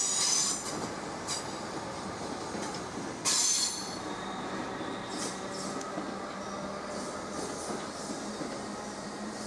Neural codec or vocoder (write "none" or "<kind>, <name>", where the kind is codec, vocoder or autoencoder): none